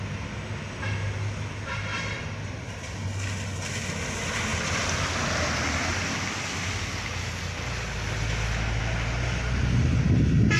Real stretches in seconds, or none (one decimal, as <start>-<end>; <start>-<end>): 0.0-10.6